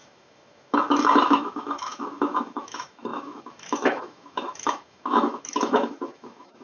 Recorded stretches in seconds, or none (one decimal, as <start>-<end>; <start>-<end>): none